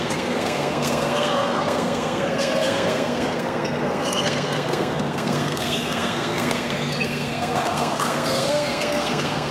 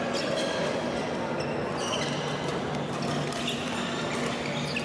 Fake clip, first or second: first